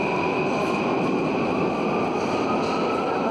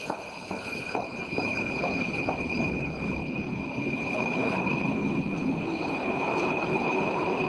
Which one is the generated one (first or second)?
second